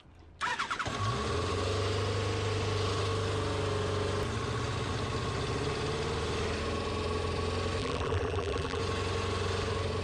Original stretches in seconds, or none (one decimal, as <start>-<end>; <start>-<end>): 0.0-7.8; 8.8-10.0